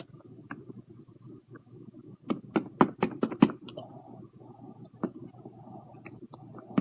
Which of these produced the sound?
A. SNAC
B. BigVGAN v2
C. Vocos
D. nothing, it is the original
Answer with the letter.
D